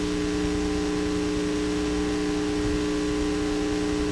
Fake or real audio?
real